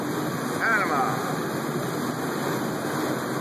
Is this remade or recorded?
recorded